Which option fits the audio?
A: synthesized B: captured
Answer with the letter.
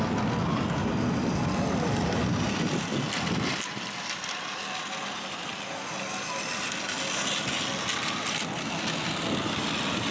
B